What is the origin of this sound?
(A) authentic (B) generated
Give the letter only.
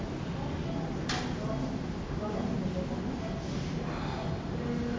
A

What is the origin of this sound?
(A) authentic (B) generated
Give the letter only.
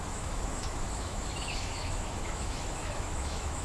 B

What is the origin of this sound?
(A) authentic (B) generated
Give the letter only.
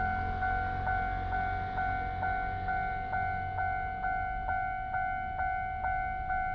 A